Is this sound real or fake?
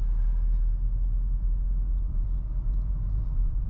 real